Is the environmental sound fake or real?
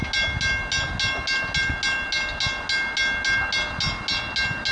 real